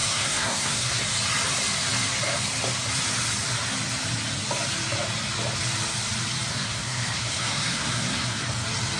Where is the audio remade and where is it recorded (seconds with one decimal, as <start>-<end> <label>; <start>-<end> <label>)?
0.0-1.0 remade; 1.0-6.5 recorded; 6.5-8.4 remade; 8.4-9.0 recorded